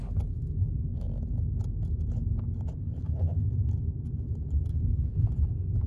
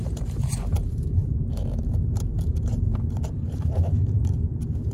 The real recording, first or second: first